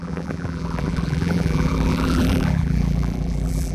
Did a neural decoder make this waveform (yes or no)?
yes